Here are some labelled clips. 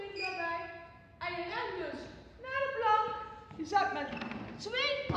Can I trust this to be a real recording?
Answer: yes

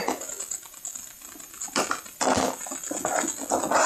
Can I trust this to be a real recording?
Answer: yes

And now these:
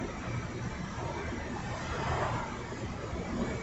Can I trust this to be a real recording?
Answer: yes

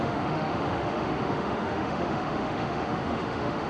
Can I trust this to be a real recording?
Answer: no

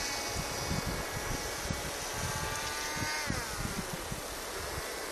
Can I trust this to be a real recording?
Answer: yes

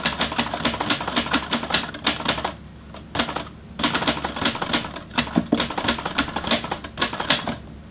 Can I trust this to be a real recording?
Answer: yes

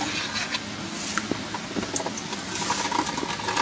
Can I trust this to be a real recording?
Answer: yes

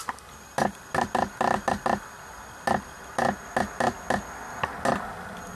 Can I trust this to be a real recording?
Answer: yes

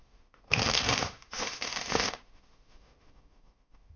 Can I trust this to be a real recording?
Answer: no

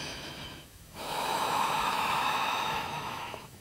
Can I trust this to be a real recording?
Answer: no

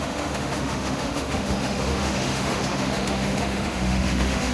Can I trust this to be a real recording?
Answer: no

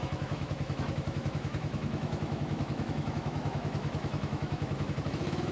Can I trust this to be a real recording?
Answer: no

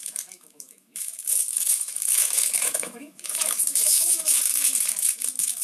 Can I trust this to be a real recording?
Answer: no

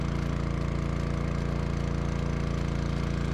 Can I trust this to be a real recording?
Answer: yes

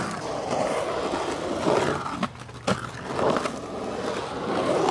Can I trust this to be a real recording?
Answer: yes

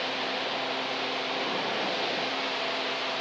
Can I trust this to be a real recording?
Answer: yes